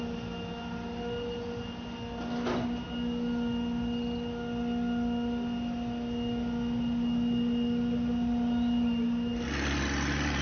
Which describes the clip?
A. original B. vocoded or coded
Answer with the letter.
A